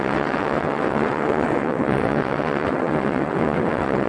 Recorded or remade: remade